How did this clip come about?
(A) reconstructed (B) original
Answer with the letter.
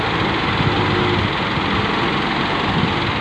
B